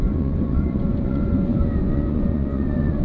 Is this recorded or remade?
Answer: remade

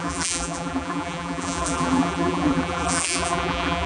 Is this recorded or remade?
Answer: remade